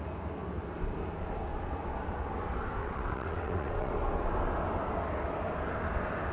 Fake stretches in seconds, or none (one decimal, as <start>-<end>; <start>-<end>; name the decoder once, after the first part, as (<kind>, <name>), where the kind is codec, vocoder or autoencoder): 2.8-3.9 (vocoder, WaveNeXt)